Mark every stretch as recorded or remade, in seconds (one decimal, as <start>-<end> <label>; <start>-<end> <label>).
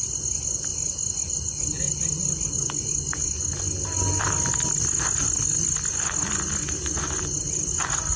0.0-8.2 recorded